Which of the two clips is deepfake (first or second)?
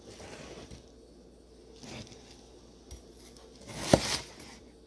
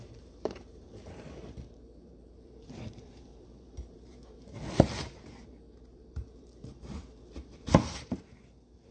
second